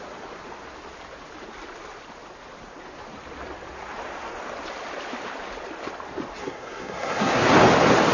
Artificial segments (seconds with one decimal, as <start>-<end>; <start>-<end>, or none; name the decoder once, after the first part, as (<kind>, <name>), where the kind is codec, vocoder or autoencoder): 6.4-7.5 (codec, SNAC)